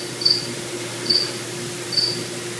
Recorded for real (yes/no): yes